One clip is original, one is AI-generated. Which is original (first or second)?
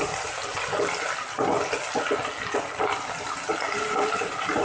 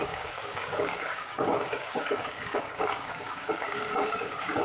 first